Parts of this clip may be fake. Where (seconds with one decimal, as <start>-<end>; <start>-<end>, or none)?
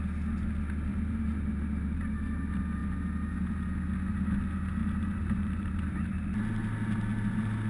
0.9-1.5; 4.8-6.4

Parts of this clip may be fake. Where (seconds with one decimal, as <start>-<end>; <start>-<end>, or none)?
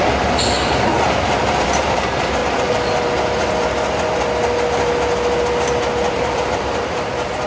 0.0-0.9; 1.6-2.4; 6.1-7.5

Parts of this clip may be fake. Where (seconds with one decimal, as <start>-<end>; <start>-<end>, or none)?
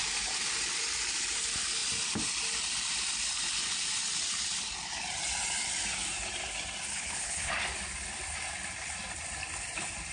6.9-7.5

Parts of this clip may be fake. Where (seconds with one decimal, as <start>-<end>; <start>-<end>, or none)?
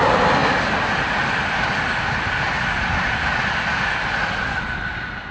none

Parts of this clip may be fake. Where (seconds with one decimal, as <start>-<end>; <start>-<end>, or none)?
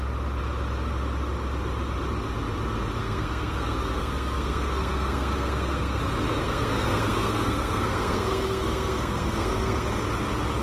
3.0-6.0; 6.4-10.0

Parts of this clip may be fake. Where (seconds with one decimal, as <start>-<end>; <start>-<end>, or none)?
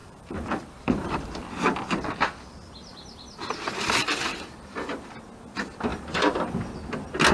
0.0-1.5; 2.9-5.1; 5.9-6.6